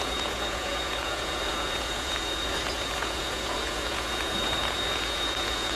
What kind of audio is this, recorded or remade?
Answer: remade